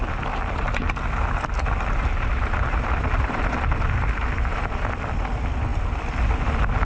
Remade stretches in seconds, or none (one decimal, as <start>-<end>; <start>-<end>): none

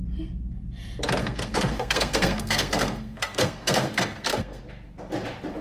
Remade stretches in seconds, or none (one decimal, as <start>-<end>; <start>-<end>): 1.2-4.6